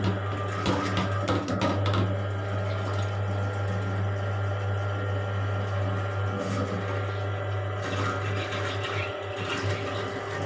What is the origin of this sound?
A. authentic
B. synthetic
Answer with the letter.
A